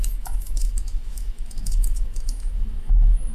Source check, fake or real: fake